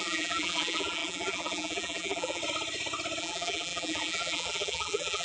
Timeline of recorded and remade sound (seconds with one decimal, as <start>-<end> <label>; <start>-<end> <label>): 0.0-2.4 remade; 2.4-3.2 recorded; 3.2-5.2 remade